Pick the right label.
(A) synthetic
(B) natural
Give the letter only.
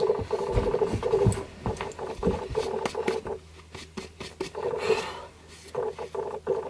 B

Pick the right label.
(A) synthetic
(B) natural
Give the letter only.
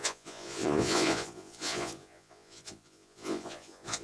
A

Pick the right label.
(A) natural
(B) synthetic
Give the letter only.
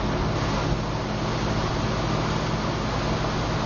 A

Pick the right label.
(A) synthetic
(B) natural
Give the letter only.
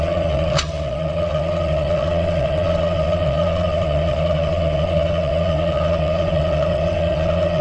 A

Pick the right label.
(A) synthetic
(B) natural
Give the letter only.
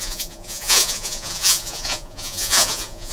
A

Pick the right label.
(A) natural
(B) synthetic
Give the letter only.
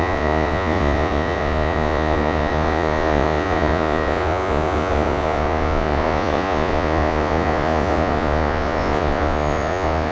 B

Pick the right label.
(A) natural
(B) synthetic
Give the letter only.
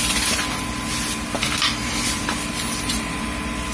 A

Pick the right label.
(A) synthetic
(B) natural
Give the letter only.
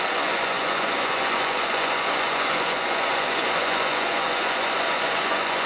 A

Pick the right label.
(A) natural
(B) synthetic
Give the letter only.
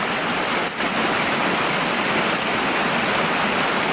A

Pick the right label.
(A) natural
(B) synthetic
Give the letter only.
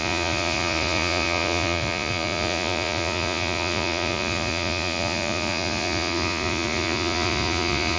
B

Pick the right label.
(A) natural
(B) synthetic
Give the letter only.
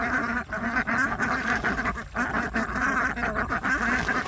A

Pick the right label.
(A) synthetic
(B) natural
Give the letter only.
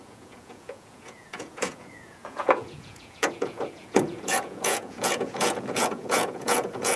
A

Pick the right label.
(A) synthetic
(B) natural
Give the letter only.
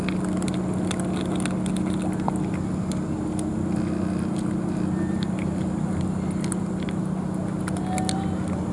B